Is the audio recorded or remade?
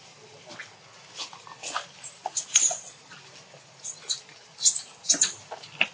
recorded